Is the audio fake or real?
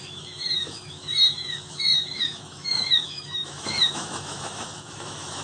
fake